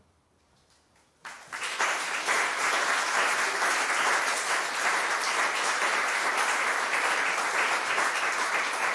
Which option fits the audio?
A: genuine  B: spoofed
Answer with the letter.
B